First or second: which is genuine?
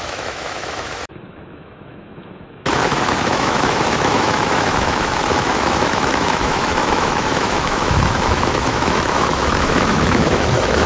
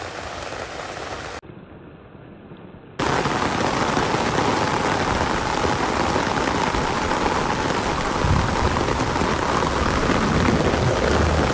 second